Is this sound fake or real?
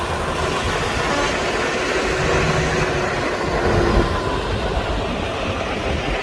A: real